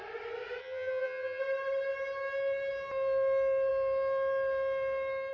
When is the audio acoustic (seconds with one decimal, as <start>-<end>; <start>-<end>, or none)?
0.0-0.6; 1.4-5.3